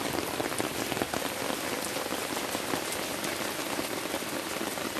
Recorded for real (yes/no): yes